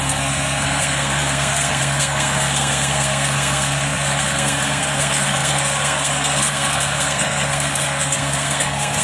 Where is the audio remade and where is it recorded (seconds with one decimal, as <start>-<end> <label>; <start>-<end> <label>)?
0.0-9.0 remade